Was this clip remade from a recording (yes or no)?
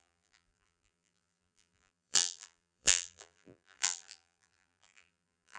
yes